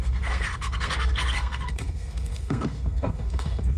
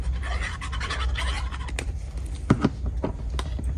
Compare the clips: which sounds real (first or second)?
second